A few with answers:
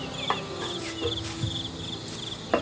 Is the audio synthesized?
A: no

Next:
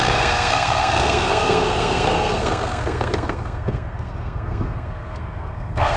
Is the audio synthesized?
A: yes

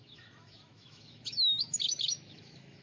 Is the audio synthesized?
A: yes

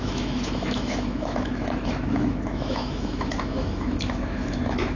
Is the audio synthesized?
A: yes